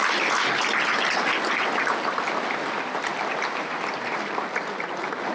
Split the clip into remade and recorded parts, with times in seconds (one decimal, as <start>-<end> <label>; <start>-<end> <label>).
0.0-3.1 recorded; 3.1-4.3 remade; 4.3-5.3 recorded